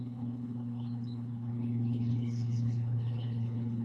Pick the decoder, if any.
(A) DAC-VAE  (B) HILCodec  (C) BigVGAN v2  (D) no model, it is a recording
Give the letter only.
B